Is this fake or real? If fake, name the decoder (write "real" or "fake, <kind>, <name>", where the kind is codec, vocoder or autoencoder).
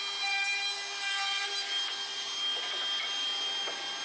real